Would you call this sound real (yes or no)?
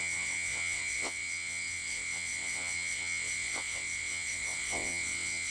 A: no